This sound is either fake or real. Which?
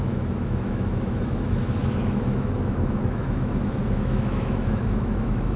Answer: fake